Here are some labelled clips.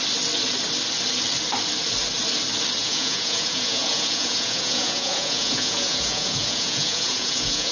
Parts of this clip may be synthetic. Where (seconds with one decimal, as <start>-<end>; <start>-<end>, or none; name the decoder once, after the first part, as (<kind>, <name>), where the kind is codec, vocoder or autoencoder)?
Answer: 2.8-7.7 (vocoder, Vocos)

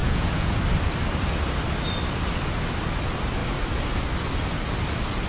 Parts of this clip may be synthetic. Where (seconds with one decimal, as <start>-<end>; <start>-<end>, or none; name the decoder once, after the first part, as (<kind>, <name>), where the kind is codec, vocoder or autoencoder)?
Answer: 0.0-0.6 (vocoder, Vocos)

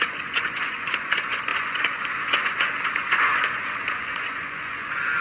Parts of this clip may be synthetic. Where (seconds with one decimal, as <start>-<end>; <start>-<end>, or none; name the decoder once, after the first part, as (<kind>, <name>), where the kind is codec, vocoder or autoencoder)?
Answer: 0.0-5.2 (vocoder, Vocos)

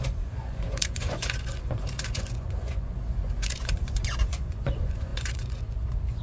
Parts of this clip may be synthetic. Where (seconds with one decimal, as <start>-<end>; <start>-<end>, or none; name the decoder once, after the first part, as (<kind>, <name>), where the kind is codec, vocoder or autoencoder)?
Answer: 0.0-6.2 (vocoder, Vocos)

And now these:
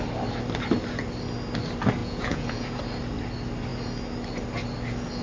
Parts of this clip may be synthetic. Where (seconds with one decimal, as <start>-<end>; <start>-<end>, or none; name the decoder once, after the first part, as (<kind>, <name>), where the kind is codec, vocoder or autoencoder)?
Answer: 2.0-2.8 (vocoder, Vocos)

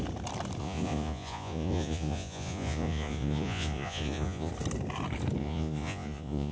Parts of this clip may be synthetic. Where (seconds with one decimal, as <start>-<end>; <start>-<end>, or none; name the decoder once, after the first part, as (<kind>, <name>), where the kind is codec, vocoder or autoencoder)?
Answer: 0.6-4.5 (vocoder, Vocos); 5.4-6.5